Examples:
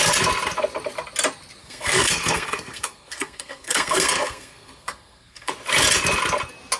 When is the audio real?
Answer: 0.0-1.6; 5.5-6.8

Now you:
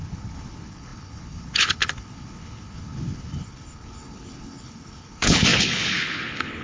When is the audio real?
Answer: none

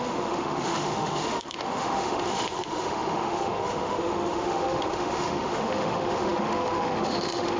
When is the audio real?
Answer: none

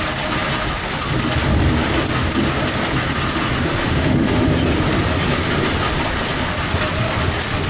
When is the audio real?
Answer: 0.0-3.8; 4.5-7.7

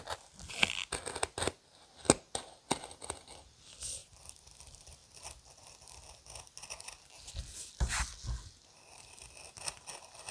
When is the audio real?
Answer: 0.0-4.0; 4.5-10.3